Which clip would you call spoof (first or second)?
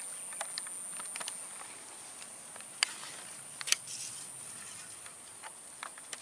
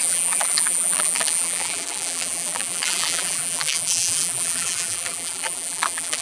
second